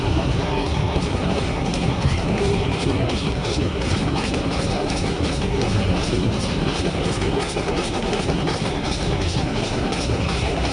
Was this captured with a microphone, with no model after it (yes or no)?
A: no